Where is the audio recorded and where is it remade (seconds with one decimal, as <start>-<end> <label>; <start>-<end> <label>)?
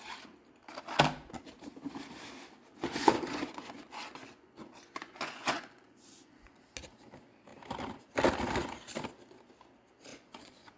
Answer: 0.0-2.7 recorded; 2.7-6.6 remade; 6.6-10.1 recorded; 10.1-10.8 remade